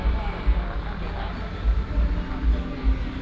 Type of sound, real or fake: real